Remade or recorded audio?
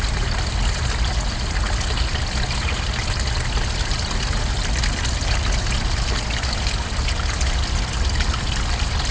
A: recorded